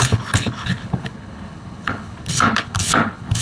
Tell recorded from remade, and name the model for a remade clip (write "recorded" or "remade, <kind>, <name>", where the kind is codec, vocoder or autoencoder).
remade, codec, HILCodec